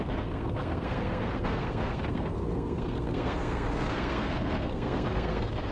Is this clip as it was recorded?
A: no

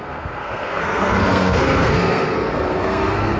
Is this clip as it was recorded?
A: no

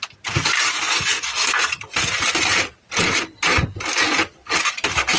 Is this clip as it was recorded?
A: yes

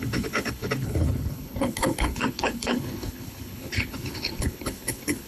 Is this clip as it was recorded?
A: no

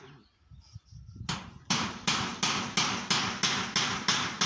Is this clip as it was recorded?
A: yes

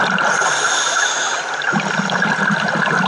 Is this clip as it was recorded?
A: yes